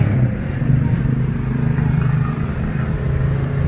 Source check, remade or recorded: recorded